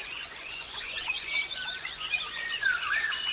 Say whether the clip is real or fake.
fake